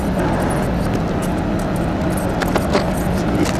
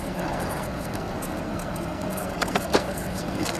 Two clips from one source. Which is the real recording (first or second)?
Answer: first